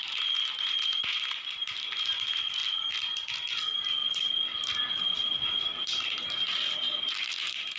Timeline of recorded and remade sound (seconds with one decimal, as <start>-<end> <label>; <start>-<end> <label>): 0.0-7.8 recorded